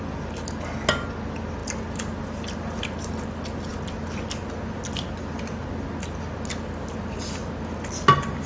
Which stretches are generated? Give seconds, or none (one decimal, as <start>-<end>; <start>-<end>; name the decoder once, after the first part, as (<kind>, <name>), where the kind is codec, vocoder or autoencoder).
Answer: none